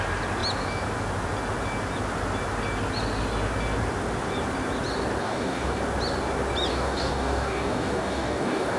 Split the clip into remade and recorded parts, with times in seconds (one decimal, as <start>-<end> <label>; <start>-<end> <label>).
0.0-5.2 recorded; 5.2-5.8 remade; 5.8-6.7 recorded; 6.7-8.8 remade